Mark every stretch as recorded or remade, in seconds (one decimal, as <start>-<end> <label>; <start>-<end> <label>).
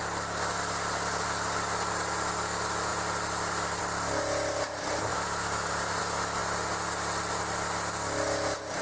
0.0-2.9 recorded; 2.9-3.8 remade; 3.8-5.1 recorded; 5.1-6.0 remade; 6.0-8.8 recorded